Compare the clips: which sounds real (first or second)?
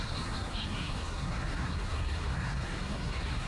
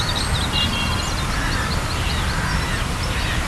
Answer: second